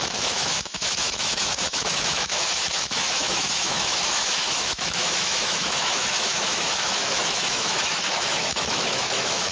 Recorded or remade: remade